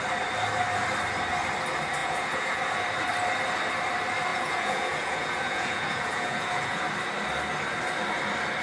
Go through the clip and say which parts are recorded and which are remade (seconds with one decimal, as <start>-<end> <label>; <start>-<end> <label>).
0.0-2.0 recorded; 2.0-2.6 remade; 2.6-4.3 recorded; 4.3-6.8 remade; 6.8-8.6 recorded